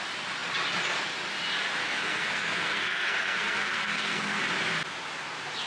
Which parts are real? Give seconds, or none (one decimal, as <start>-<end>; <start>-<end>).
0.0-1.8; 4.4-5.7

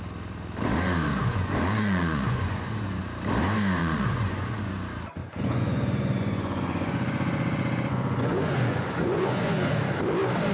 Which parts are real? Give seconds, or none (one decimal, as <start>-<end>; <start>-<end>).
0.0-1.2; 3.0-3.8; 4.7-5.2; 9.7-10.5